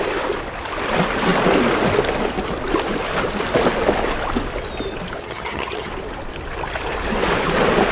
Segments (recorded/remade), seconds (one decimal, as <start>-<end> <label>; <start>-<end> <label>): 0.0-5.2 recorded; 5.2-5.9 remade; 5.9-7.9 recorded